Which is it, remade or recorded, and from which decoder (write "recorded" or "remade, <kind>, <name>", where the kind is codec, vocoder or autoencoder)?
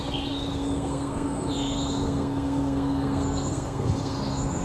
remade, codec, SNAC